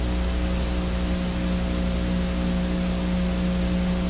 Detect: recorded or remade recorded